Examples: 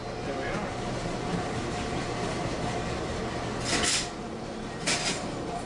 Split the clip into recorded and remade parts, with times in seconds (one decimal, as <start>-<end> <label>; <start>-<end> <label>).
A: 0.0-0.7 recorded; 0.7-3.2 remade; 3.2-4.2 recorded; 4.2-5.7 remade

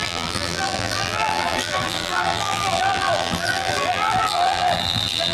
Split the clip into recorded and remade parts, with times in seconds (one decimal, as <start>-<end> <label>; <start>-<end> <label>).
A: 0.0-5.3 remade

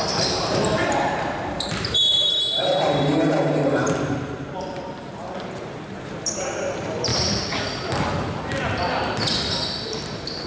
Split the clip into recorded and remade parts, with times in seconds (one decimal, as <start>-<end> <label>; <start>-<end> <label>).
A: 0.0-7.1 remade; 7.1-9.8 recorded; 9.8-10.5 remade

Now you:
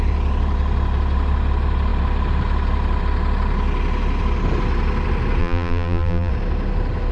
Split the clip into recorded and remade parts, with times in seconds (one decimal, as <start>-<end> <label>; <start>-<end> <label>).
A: 0.0-5.4 recorded; 5.4-6.3 remade; 6.3-7.1 recorded

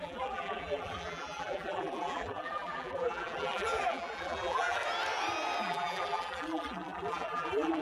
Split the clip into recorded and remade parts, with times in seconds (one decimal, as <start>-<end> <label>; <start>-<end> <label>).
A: 0.0-4.8 remade; 4.8-5.6 recorded; 5.6-7.8 remade

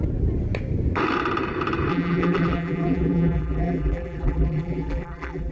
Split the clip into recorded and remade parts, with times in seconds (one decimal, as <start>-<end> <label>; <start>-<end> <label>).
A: 0.0-1.9 recorded; 1.9-5.5 remade